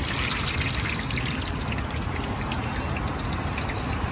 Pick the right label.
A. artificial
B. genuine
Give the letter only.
B